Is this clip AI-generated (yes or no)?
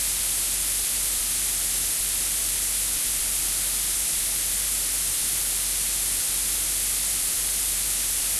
no